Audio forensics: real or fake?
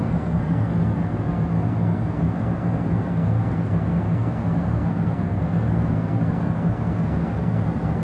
fake